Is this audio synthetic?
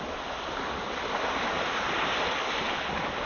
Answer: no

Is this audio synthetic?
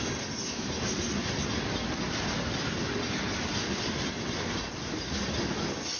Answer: no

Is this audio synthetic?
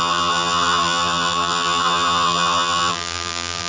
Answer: yes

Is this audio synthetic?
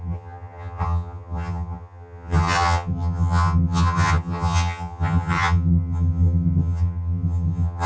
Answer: yes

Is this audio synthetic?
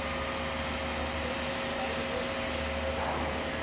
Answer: no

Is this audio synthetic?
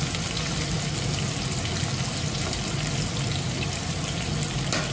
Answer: no